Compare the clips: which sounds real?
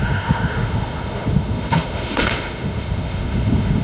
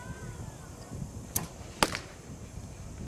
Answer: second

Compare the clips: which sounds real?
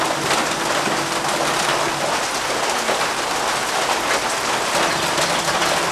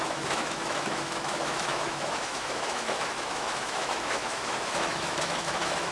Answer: first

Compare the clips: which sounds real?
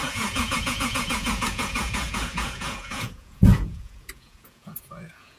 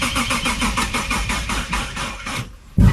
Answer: second